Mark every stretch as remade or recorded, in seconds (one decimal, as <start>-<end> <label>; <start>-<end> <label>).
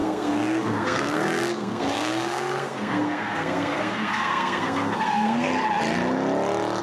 0.0-5.5 remade; 5.5-6.8 recorded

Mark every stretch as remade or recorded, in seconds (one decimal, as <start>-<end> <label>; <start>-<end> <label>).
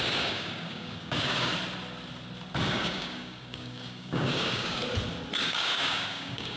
0.0-1.5 remade; 1.5-2.7 recorded; 2.7-4.8 remade; 4.8-5.4 recorded; 5.4-6.6 remade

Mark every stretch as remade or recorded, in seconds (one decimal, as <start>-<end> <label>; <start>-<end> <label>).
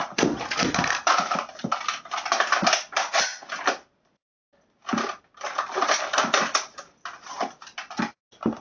0.0-8.6 recorded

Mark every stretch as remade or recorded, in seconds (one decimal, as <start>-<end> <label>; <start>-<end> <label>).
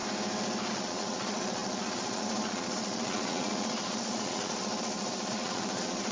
0.0-0.7 recorded; 0.7-6.1 remade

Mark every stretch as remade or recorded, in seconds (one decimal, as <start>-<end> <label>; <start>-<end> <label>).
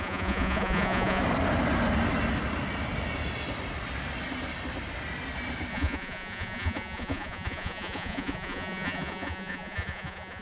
0.0-1.2 remade; 1.2-5.7 recorded; 5.7-10.4 remade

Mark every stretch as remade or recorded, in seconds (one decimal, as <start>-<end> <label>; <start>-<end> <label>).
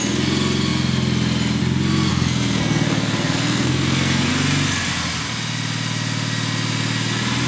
0.0-2.1 recorded; 2.1-4.3 remade; 4.3-7.5 recorded